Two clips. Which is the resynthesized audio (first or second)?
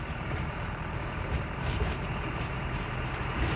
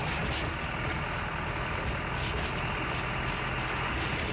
first